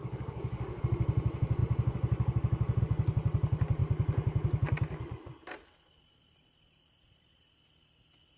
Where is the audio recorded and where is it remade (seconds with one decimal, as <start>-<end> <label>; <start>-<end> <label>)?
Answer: 0.0-0.8 remade; 0.8-8.4 recorded